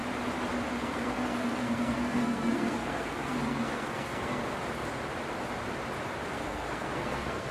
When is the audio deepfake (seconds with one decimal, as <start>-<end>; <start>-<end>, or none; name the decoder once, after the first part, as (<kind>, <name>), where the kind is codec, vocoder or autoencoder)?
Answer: 0.8-4.4 (codec, SNAC); 6.3-7.5